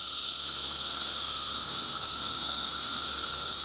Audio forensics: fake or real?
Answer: fake